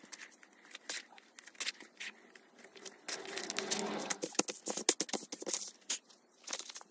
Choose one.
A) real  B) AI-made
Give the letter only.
A